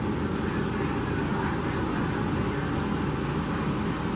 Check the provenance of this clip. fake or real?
real